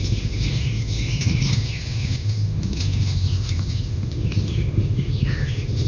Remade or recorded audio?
remade